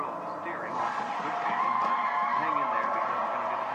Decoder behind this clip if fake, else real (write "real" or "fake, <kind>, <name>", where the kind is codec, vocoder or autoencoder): real